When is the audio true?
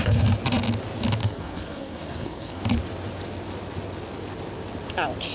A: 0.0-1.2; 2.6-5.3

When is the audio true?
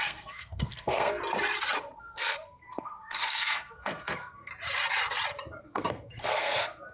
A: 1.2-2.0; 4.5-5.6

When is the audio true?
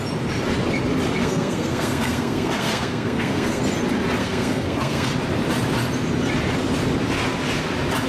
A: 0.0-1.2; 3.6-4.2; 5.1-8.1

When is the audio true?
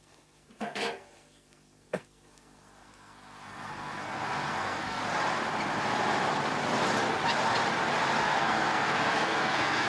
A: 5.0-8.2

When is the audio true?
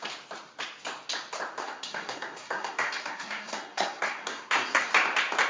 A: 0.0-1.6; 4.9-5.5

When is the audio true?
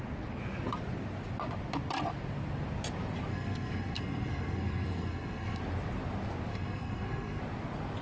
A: 0.0-3.3; 5.6-6.5; 7.4-8.0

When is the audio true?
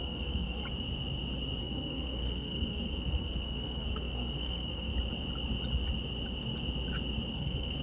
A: 0.6-1.6; 4.9-7.3